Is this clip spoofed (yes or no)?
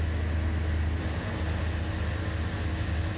no